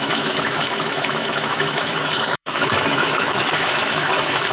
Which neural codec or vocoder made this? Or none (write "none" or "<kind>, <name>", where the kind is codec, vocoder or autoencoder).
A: autoencoder, DAC-VAE